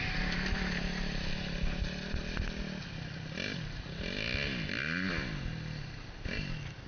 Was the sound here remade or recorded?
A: recorded